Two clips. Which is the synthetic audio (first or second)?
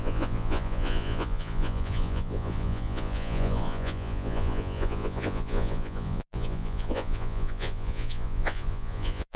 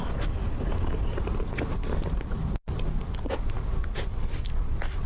first